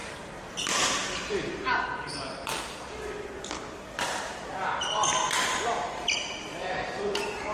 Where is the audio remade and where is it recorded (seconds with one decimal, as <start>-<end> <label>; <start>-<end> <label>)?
0.0-7.5 recorded